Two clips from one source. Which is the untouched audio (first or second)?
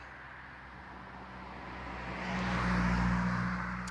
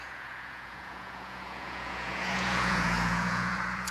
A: first